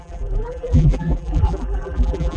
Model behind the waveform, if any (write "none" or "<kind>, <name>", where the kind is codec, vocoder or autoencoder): vocoder, BigVGAN v2